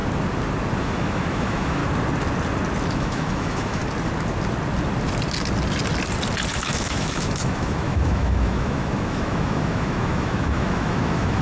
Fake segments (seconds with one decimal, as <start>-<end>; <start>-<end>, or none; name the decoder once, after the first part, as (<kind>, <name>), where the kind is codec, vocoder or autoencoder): 0.8-1.8 (autoencoder, DAC-VAE); 2.9-3.8; 6.5-11.4